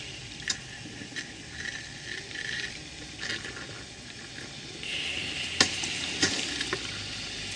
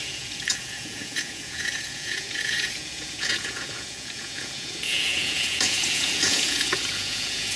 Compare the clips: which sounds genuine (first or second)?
first